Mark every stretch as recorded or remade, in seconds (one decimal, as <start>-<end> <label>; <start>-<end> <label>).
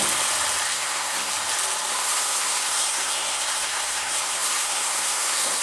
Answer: 0.0-0.7 recorded; 0.7-1.3 remade; 1.3-1.9 recorded; 1.9-5.6 remade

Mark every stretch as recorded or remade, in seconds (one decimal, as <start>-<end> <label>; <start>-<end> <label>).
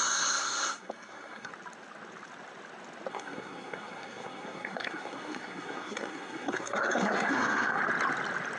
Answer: 0.0-1.5 remade; 1.5-3.1 recorded; 3.1-7.8 remade; 7.8-8.6 recorded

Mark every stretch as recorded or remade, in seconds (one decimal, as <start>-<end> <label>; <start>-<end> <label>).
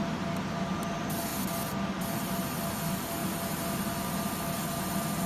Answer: 0.0-1.3 recorded; 1.3-2.6 remade; 2.6-5.3 recorded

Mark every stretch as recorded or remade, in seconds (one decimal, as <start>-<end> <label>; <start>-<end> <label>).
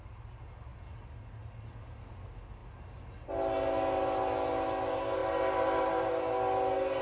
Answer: 0.0-7.0 recorded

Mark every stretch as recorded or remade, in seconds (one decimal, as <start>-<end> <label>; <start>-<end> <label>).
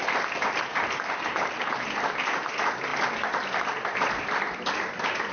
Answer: 0.0-5.3 recorded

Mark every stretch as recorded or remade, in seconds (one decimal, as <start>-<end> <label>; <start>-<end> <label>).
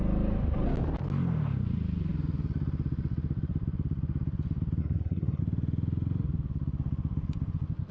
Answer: 0.0-4.8 recorded; 4.8-5.4 remade; 5.4-7.9 recorded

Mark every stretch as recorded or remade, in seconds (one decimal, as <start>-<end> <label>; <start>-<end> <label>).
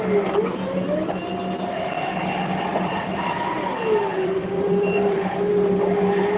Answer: 0.0-2.7 recorded; 2.7-3.3 remade; 3.3-4.1 recorded; 4.1-5.2 remade; 5.2-6.4 recorded